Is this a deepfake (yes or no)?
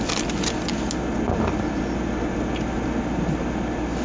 no